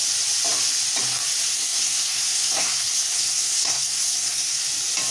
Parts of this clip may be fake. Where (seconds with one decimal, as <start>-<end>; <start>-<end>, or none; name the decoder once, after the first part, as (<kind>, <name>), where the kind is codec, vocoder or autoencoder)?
1.5-4.6 (codec, SNAC)